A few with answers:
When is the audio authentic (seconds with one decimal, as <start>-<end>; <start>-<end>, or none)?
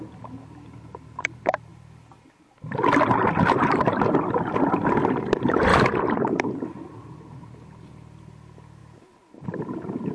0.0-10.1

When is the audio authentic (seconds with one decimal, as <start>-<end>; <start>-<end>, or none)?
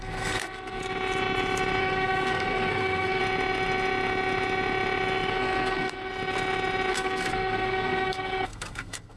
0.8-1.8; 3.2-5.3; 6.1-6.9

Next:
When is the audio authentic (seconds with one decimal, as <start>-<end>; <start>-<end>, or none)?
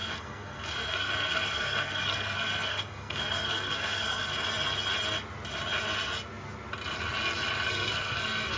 4.3-7.7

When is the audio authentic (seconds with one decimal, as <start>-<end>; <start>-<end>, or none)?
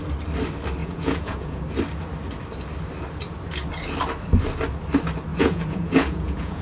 0.0-0.8; 1.6-5.3